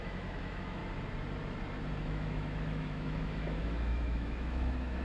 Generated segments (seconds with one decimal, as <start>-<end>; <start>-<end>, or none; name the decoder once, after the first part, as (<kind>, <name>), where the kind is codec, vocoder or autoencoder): 0.0-0.8 (autoencoder, DAC-VAE); 2.0-5.0

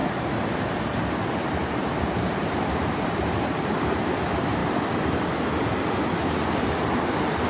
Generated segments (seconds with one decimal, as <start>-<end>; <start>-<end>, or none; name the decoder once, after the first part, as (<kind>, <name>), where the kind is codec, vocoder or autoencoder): 0.0-3.7 (vocoder, BigVGAN v2)

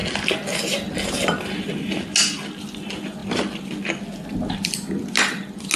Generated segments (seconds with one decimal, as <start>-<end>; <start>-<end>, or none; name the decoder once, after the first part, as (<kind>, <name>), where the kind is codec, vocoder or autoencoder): none

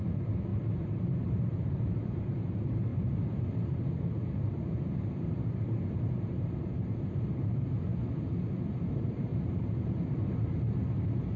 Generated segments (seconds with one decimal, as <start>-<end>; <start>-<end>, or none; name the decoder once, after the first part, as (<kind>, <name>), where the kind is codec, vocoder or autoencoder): 0.0-7.9 (vocoder, BigVGAN v2); 8.9-11.4